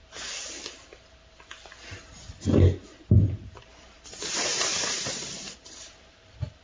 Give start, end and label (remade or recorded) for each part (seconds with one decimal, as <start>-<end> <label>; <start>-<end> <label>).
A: 0.0-3.6 recorded; 3.6-6.6 remade

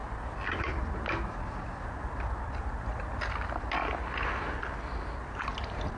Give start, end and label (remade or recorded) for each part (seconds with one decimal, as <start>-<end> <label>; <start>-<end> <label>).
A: 0.0-6.0 recorded